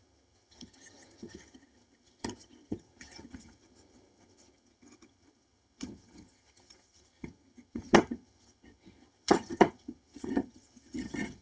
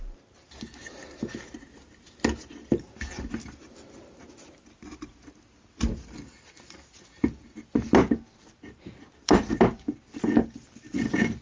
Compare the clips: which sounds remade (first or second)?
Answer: first